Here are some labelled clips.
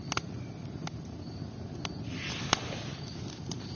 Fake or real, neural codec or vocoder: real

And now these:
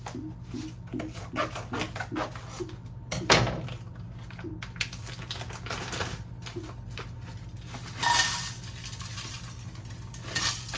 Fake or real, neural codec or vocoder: real